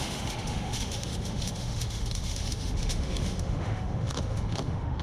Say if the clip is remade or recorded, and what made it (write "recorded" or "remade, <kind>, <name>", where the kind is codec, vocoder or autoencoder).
remade, autoencoder, DAC-VAE